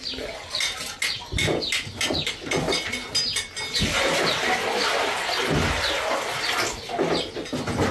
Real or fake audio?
real